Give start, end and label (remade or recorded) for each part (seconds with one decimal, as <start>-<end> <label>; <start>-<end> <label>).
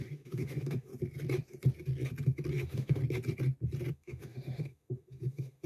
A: 0.0-0.9 remade; 0.9-2.5 recorded; 2.5-3.0 remade; 3.0-3.9 recorded; 3.9-5.7 remade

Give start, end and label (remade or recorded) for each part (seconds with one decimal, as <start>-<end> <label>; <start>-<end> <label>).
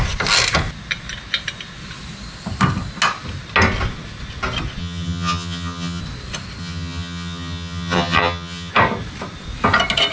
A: 0.0-4.8 recorded; 4.8-6.0 remade; 6.0-6.6 recorded; 6.6-8.7 remade; 8.7-10.1 recorded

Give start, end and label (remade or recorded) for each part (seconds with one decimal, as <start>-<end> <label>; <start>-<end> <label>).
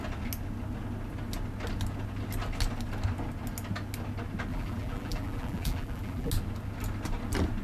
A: 0.0-4.5 recorded; 4.5-6.3 remade; 6.3-7.6 recorded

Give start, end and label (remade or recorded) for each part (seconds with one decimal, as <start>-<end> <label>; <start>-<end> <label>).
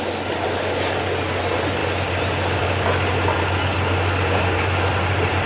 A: 0.0-5.5 recorded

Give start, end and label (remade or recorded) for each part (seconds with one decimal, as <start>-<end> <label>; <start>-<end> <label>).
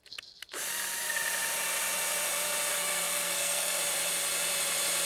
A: 0.0-2.7 recorded; 2.7-3.8 remade; 3.8-5.1 recorded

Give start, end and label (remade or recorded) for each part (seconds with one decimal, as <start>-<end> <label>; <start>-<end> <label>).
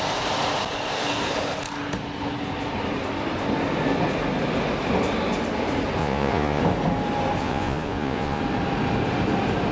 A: 0.0-6.0 recorded; 6.0-6.6 remade; 6.6-7.4 recorded; 7.4-8.4 remade; 8.4-9.7 recorded